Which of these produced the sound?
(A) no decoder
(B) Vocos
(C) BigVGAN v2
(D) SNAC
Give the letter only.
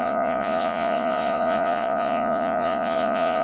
B